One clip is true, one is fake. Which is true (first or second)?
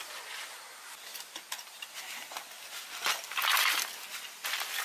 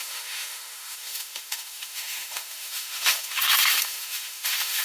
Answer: first